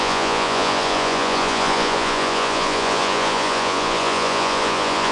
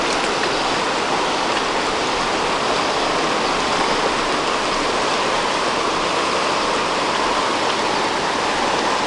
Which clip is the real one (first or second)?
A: second